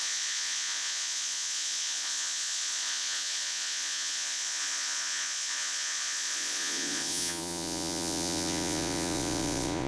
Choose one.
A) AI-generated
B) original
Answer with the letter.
A